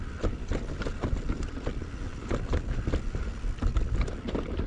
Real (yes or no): yes